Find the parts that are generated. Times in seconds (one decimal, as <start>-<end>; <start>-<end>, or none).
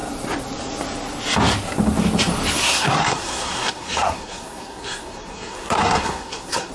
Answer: 2.6-6.7